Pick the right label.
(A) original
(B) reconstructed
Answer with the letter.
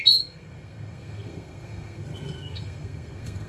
B